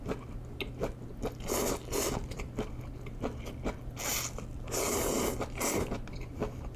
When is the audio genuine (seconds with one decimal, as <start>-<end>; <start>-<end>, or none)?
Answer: 0.0-6.8